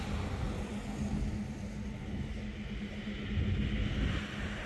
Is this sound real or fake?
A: real